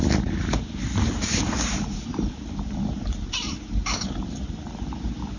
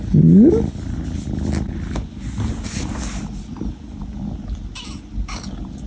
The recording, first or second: second